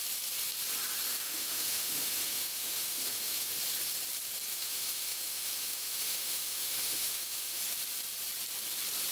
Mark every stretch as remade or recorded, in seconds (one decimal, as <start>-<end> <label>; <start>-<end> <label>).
0.0-1.1 recorded; 1.1-3.5 remade; 3.5-4.5 recorded; 4.5-7.6 remade; 7.6-9.1 recorded